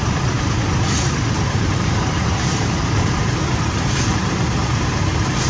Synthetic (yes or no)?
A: yes